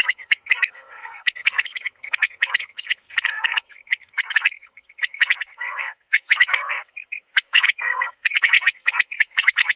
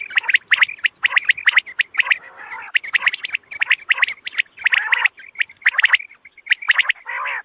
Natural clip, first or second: second